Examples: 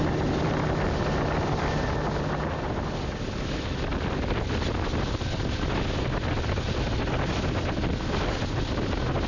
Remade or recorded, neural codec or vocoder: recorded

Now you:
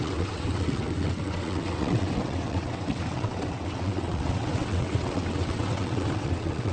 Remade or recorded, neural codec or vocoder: remade, vocoder, WaveNeXt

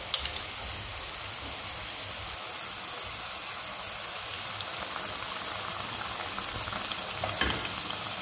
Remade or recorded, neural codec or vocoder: recorded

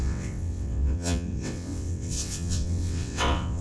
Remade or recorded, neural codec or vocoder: remade, vocoder, WaveNeXt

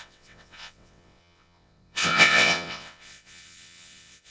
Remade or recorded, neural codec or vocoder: remade, vocoder, WaveNeXt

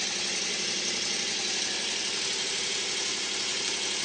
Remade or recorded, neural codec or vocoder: recorded